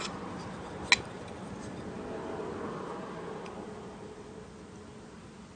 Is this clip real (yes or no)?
yes